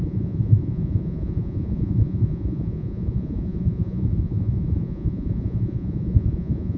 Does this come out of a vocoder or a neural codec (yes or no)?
yes